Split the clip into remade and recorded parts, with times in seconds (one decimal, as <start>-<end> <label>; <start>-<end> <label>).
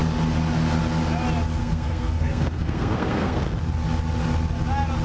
0.0-1.6 recorded; 1.6-3.4 remade; 3.4-5.0 recorded